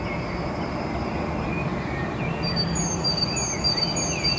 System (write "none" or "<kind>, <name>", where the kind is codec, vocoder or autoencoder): none